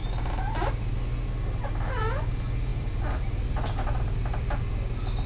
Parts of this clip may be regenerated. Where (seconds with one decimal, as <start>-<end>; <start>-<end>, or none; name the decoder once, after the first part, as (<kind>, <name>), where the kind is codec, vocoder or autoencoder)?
2.7-4.6 (vocoder, BigVGAN v2)